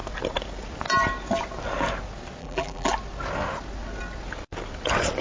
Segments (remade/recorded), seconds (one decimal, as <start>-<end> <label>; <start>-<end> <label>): 0.0-2.4 recorded; 2.4-2.9 remade; 2.9-5.2 recorded